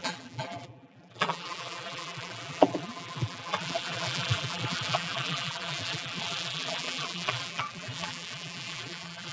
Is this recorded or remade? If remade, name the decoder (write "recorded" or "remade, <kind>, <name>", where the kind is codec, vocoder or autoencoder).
remade, vocoder, BigVGAN v2